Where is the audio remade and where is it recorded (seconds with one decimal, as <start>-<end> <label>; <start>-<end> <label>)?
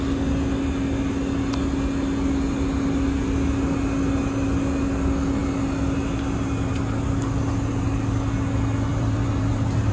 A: 0.0-8.9 recorded; 8.9-9.9 remade